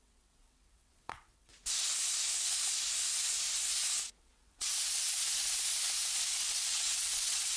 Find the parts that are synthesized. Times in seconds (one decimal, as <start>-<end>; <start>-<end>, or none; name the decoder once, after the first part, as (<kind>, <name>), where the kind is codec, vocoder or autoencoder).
0.0-1.5 (vocoder, WaveNeXt); 4.2-4.7; 6.2-7.6

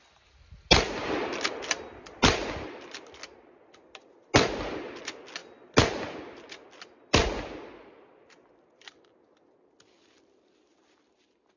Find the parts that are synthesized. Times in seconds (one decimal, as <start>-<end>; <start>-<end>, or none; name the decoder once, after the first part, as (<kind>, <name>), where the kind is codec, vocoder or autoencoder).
none

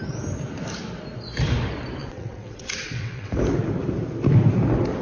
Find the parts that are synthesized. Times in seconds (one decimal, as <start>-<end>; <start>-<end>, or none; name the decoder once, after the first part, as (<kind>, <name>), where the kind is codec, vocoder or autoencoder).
2.0-3.3 (vocoder, WaveNeXt)